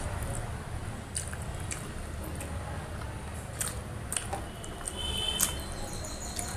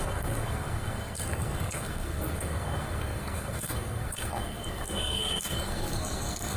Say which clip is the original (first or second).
first